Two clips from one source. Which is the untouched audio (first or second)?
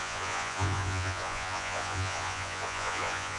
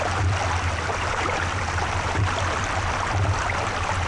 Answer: second